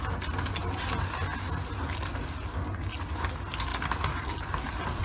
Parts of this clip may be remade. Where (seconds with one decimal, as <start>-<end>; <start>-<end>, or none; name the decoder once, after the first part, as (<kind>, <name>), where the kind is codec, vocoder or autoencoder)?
none